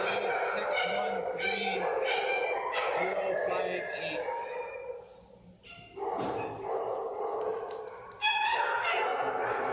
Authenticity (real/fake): real